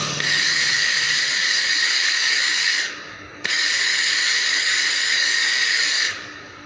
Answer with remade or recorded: remade